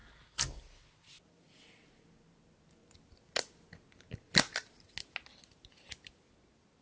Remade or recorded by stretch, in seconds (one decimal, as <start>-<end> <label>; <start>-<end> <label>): 0.0-6.8 recorded